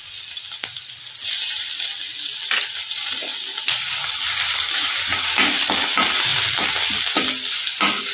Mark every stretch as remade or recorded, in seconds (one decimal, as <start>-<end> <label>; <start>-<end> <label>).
0.0-8.1 recorded

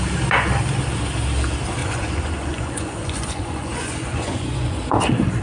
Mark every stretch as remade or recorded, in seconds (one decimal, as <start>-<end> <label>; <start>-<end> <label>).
0.0-1.8 recorded; 1.8-5.0 remade; 5.0-5.4 recorded

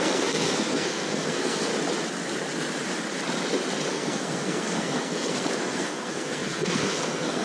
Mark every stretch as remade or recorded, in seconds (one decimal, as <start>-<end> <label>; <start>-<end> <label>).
0.0-1.7 remade; 1.7-3.9 recorded; 3.9-7.4 remade

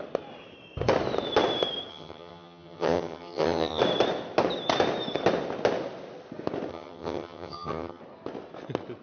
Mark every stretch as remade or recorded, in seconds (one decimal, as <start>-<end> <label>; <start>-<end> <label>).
0.0-1.9 recorded; 1.9-3.8 remade; 3.8-6.7 recorded; 6.7-8.0 remade; 8.0-9.0 recorded

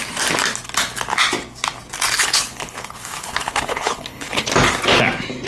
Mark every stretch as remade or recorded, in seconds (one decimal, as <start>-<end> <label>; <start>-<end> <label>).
0.0-2.2 recorded; 2.2-4.5 remade; 4.5-5.5 recorded

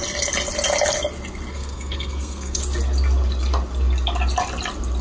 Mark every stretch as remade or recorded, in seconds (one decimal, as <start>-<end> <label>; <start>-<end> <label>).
0.0-1.5 recorded; 1.5-2.6 remade; 2.6-5.0 recorded